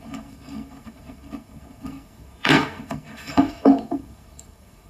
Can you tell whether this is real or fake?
fake